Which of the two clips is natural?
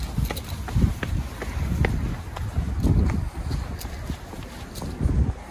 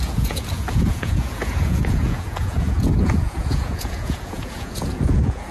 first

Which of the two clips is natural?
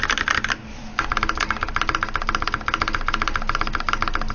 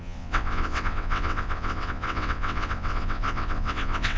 first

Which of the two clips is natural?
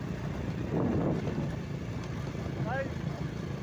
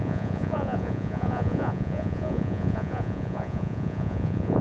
first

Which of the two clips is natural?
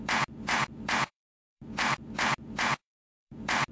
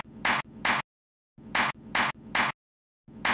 second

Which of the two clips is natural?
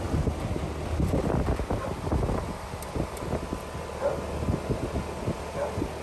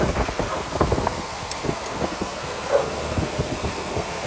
first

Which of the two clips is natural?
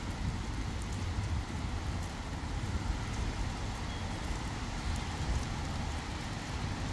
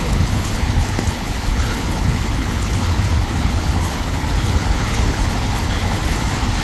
first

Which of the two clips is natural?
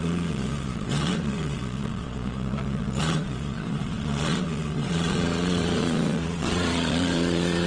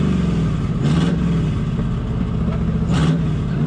second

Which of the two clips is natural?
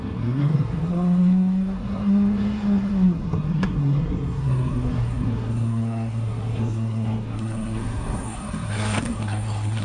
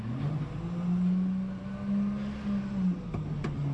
second